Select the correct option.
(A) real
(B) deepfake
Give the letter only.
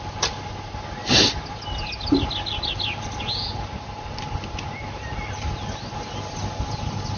A